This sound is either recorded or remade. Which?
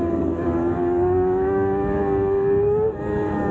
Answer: remade